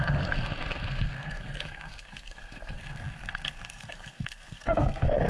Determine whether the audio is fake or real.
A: fake